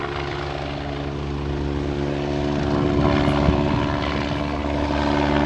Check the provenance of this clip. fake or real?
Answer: real